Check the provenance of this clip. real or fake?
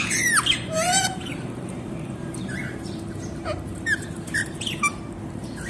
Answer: fake